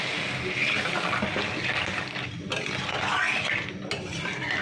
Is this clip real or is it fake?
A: real